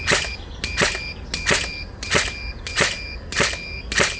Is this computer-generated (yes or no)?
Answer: no